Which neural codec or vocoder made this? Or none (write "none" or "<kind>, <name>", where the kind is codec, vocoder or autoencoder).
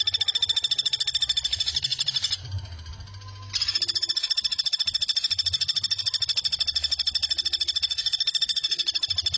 none